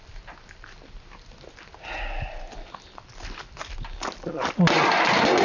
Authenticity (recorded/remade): recorded